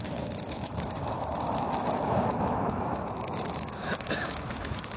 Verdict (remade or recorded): remade